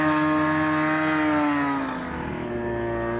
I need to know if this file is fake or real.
real